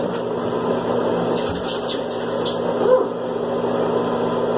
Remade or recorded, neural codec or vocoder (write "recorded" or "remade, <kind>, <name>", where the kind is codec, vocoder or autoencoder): recorded